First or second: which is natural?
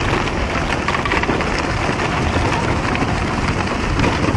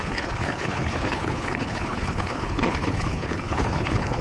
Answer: first